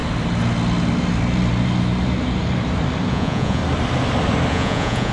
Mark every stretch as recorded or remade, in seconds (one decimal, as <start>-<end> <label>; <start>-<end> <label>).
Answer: 0.0-3.1 recorded; 3.1-3.6 remade; 3.6-4.5 recorded; 4.5-5.1 remade